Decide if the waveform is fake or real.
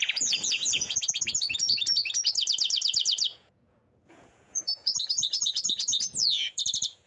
fake